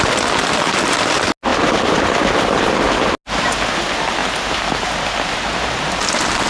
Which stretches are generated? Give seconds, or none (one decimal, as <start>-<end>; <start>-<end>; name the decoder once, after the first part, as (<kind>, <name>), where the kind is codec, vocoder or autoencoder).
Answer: none